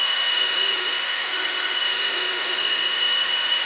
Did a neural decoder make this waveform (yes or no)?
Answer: yes